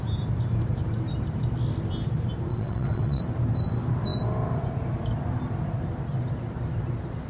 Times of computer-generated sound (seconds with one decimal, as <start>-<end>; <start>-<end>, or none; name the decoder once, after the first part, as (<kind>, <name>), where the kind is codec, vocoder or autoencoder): 2.5-3.2 (vocoder, WaveNeXt)